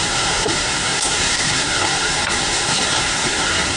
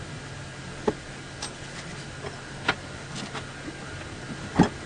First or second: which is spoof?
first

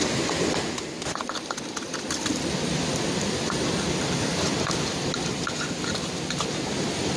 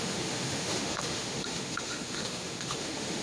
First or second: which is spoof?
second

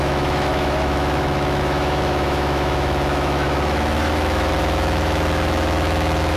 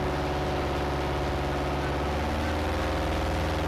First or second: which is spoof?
first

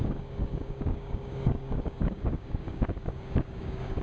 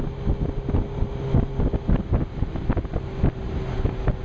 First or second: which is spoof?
first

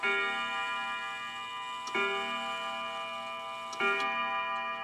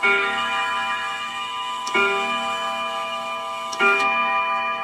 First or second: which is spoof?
second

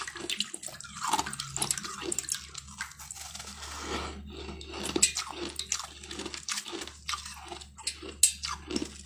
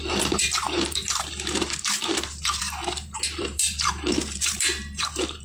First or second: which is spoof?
second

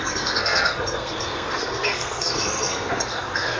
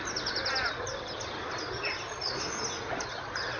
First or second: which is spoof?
first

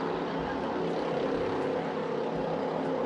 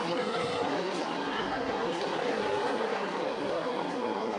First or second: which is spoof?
second